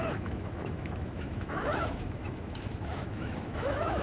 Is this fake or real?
fake